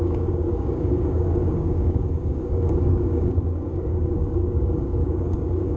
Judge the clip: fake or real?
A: fake